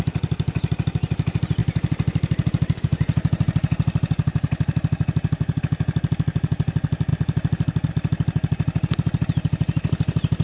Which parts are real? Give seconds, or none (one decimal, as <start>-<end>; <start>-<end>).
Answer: 0.0-10.4